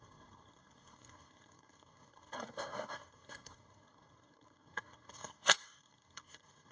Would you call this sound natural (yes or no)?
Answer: no